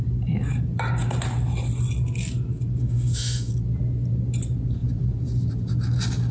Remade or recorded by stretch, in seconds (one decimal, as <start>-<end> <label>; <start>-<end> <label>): 0.0-2.8 recorded; 2.8-3.5 remade; 3.5-6.3 recorded